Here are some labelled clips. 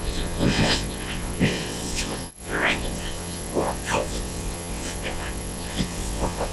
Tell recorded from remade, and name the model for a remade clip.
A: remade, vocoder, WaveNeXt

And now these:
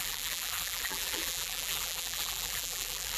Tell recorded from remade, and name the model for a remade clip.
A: remade, vocoder, BigVGAN v2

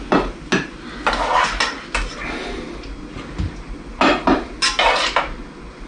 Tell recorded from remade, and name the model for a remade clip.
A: recorded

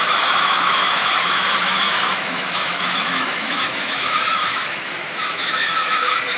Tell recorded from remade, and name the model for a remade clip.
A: remade, autoencoder, DAC-VAE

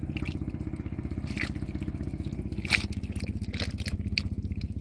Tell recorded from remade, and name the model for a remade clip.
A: recorded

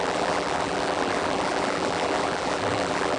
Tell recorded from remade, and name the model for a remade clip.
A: remade, vocoder, BigVGAN v2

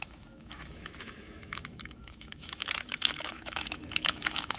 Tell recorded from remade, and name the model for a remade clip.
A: remade, autoencoder, DAC-VAE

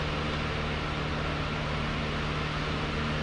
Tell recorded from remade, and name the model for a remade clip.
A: recorded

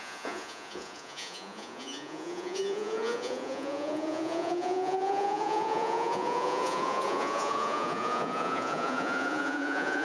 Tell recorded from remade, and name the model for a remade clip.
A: remade, vocoder, Vocos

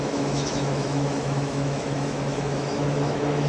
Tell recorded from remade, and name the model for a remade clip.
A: remade, autoencoder, DAC-VAE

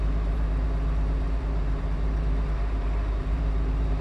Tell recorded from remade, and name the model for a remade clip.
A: remade, vocoder, BigVGAN v2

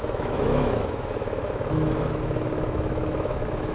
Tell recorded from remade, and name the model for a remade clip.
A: remade, autoencoder, DAC-VAE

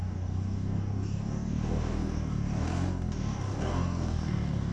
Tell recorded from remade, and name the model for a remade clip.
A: remade, codec, DAC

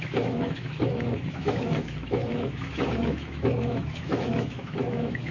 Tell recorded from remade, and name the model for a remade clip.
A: remade, autoencoder, DAC-VAE